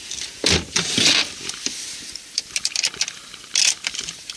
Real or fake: fake